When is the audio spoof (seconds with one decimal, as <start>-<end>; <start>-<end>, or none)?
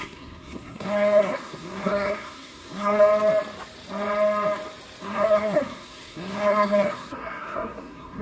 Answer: 0.0-3.1; 5.0-8.2